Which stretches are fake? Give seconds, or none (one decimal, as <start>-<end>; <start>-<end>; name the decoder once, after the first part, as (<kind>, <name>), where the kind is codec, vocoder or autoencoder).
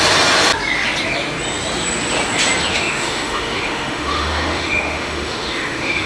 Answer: 2.7-6.1 (autoencoder, DAC-VAE)